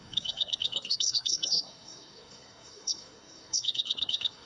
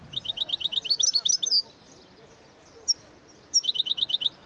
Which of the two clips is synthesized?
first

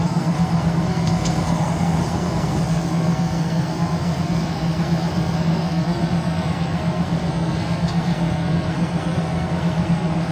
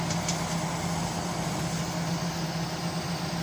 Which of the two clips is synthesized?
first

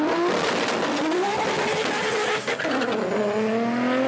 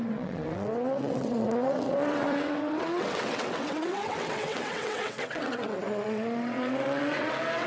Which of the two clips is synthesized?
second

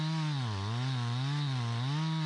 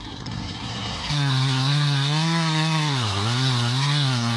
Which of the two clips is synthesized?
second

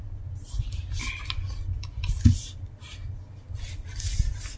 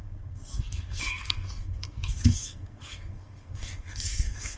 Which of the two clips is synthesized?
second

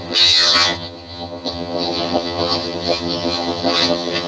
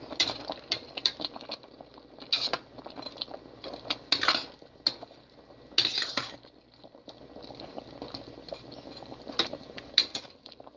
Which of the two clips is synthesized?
first